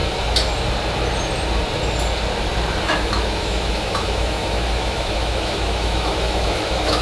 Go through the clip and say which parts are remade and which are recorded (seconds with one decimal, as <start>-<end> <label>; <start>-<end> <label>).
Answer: 0.0-2.8 recorded; 2.8-7.0 remade